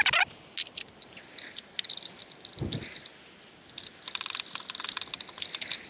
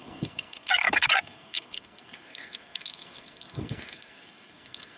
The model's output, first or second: second